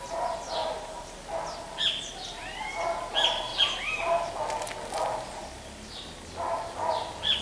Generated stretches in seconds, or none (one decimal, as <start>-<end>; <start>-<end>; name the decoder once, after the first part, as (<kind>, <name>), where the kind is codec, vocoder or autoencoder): 0.6-1.1 (vocoder, BigVGAN v2); 3.5-4.3